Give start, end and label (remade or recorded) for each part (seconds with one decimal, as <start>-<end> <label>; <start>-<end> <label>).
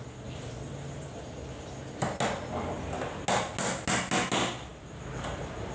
0.0-5.7 recorded